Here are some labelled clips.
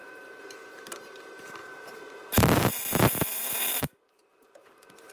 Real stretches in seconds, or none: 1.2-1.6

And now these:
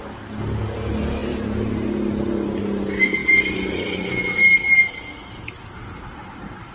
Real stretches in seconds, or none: 0.0-6.7

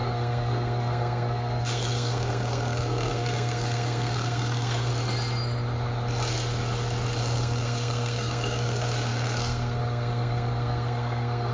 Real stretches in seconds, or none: 4.9-7.2